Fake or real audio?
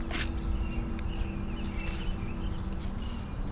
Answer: real